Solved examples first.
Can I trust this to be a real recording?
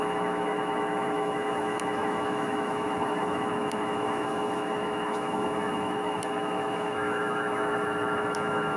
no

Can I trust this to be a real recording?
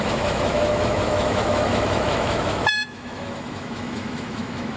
no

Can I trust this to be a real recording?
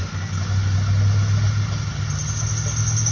yes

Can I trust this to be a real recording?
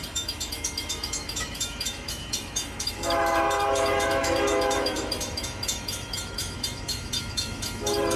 no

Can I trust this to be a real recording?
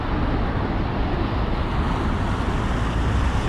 yes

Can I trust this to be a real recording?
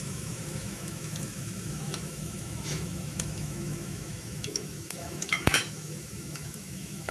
no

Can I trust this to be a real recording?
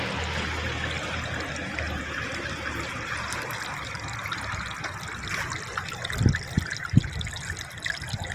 yes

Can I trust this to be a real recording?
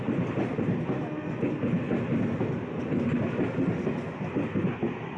yes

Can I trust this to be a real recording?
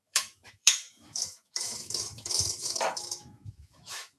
no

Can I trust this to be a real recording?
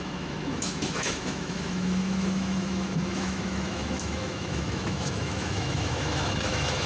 no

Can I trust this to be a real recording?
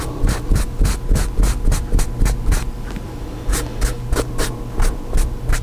yes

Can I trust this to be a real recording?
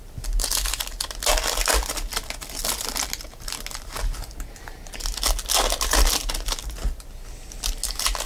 yes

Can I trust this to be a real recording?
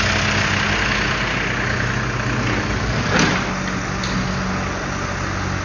yes